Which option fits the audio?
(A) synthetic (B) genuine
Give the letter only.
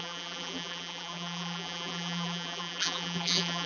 A